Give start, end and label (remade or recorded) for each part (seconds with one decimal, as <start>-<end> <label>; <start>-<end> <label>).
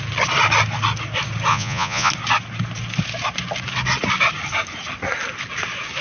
0.0-1.5 recorded; 1.5-2.1 remade; 2.1-6.0 recorded